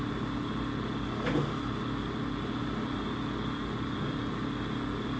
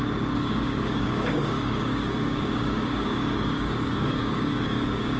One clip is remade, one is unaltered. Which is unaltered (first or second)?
first